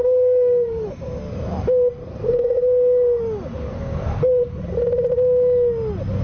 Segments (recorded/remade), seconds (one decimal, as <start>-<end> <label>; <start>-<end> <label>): 0.0-0.9 remade; 0.9-2.1 recorded; 2.1-3.2 remade; 3.2-3.7 recorded; 3.7-4.4 remade; 4.4-6.2 recorded